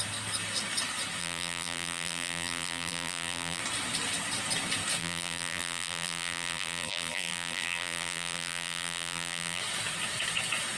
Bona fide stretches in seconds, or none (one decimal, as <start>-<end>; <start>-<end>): 0.0-1.2; 3.6-5.0; 9.6-10.8